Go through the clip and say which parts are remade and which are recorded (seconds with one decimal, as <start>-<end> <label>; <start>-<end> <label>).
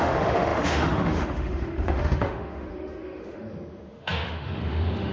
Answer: 0.0-5.1 remade